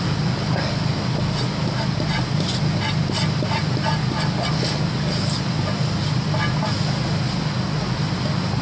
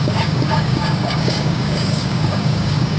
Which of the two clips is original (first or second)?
first